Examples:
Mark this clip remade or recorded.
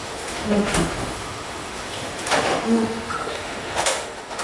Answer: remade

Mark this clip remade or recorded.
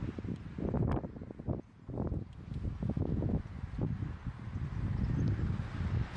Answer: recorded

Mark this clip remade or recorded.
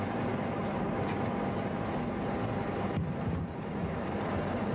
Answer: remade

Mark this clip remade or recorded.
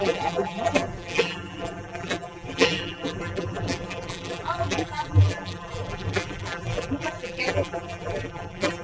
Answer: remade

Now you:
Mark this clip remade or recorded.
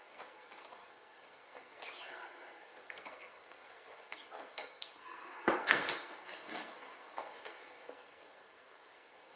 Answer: remade